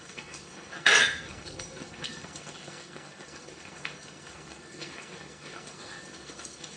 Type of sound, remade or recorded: remade